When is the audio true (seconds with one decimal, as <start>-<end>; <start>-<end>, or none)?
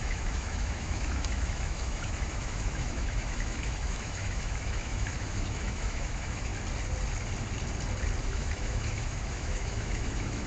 6.5-8.2